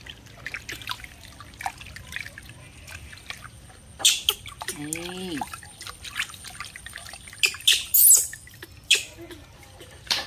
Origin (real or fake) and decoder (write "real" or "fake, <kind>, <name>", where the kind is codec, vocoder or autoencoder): real